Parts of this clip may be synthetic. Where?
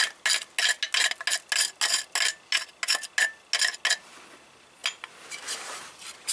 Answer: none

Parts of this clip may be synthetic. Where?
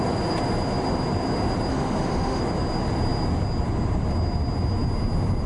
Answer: 1.7-2.4 (autoencoder, DAC-VAE)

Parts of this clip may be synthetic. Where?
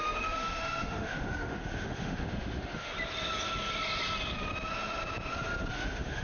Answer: 0.0-2.9 (autoencoder, DAC-VAE); 5.7-6.2